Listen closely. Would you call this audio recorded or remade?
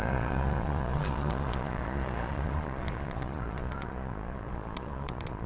remade